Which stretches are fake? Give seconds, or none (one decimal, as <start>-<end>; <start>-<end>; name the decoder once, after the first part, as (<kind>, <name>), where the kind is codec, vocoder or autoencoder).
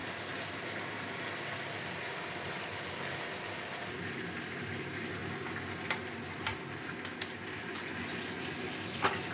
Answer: 7.6-8.7 (vocoder, Vocos)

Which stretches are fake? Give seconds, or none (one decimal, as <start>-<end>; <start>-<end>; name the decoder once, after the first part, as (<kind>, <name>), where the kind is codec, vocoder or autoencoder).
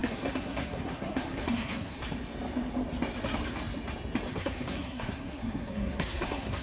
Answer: 0.0-2.0 (codec, SNAC); 4.3-6.6